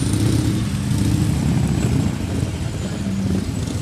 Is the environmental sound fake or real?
real